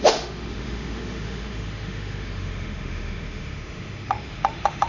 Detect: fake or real fake